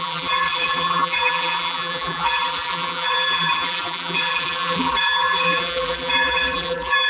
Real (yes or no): no